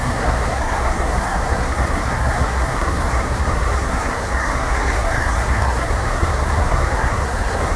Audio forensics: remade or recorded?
remade